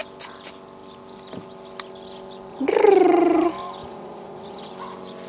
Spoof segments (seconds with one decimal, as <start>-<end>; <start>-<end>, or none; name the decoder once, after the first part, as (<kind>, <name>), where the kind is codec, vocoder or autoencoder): 2.5-3.4 (vocoder, Vocos); 3.8-4.7